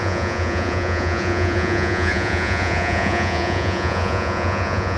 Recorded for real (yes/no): no